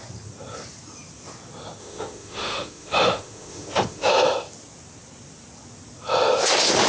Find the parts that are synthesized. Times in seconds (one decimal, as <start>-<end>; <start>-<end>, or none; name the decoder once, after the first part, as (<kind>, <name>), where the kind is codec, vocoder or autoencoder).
1.8-4.1 (autoencoder, DAC-VAE)